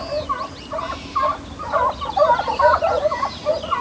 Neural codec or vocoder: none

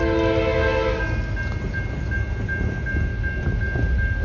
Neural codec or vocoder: none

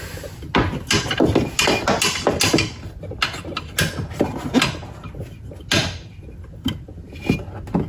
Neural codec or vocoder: none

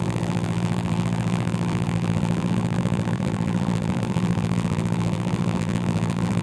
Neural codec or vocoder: vocoder, BigVGAN v2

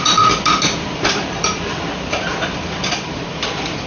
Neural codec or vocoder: vocoder, BigVGAN v2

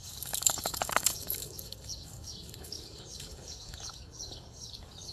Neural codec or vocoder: codec, DAC